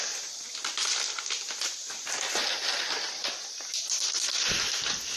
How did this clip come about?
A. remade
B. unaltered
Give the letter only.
B